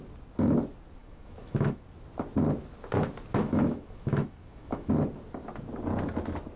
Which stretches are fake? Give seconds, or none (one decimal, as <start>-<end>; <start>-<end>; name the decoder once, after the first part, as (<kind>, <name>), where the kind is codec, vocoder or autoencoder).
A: 1.0-1.8 (autoencoder, DAC-VAE); 3.3-4.9